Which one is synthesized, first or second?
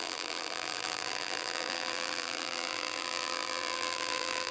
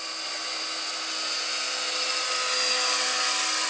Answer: first